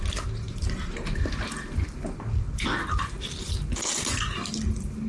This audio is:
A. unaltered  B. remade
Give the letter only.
A